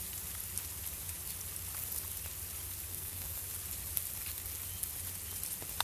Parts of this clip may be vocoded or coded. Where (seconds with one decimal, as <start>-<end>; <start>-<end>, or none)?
2.9-3.4